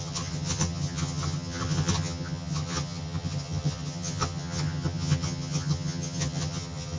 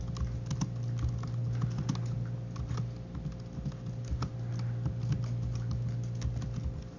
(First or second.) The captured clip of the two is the second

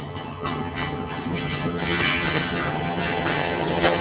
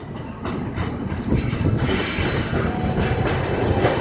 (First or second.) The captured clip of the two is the second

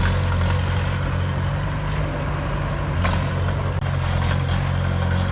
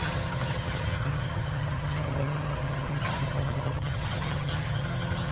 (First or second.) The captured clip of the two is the first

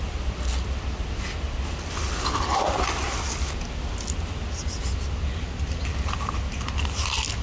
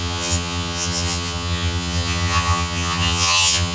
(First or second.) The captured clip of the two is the first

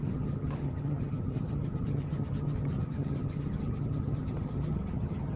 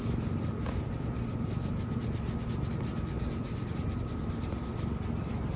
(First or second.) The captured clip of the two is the second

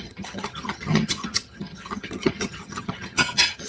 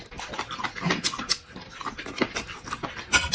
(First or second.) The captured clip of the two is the second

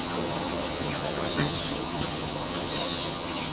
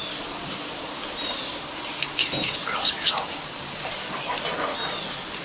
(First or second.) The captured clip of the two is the second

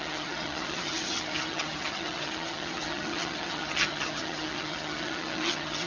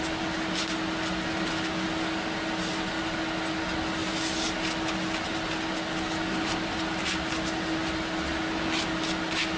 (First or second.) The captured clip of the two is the second